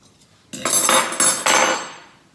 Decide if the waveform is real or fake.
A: real